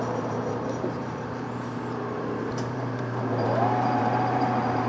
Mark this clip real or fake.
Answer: fake